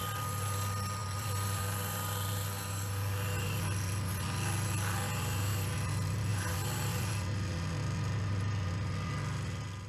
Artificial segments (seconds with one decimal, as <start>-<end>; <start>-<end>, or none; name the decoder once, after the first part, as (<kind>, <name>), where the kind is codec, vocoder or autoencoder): 1.0-1.6 (vocoder, BigVGAN v2); 6.3-7.1